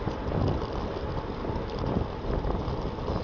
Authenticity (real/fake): real